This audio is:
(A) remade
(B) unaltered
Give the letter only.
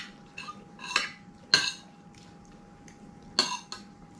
B